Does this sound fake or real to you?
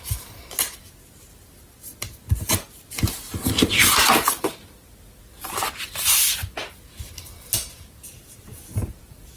real